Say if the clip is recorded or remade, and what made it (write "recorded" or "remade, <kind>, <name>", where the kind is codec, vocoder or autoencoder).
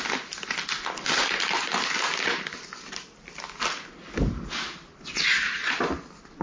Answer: recorded